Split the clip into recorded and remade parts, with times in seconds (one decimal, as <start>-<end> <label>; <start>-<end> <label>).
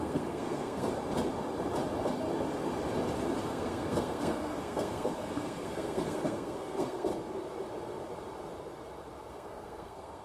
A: 0.0-0.9 remade; 0.9-3.4 recorded; 3.4-7.1 remade; 7.1-9.3 recorded; 9.3-10.2 remade